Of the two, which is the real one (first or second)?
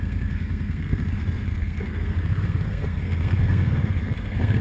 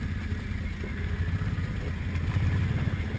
second